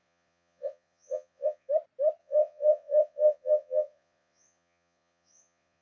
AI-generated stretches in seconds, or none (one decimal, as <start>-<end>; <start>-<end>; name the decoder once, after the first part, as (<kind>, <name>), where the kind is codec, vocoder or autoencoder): 0.0-1.7 (vocoder, Vocos); 2.2-5.8